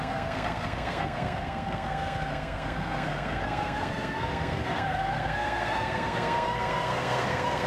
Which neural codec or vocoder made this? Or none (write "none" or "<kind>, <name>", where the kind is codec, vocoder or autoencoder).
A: codec, SNAC